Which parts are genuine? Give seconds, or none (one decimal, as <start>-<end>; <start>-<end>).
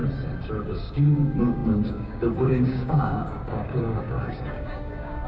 0.0-0.6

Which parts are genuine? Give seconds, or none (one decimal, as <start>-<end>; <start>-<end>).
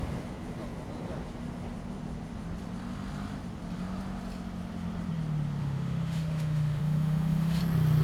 0.0-5.6; 7.6-8.0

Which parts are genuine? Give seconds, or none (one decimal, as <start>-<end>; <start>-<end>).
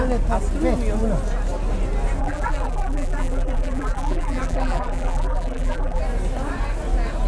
0.0-2.2; 6.0-7.3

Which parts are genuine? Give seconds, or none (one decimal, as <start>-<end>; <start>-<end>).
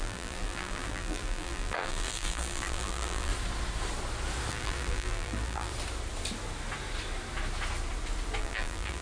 3.3-4.5; 5.7-8.4